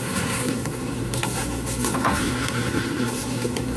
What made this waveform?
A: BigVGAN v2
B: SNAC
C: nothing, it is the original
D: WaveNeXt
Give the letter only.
B